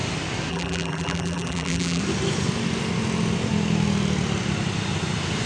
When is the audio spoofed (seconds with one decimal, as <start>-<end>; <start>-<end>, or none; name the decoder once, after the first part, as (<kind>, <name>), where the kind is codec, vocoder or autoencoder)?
0.5-2.0 (vocoder, BigVGAN v2)